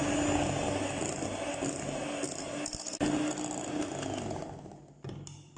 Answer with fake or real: real